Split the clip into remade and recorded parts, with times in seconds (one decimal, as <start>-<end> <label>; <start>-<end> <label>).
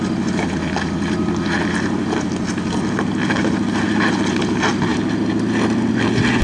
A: 0.0-6.4 recorded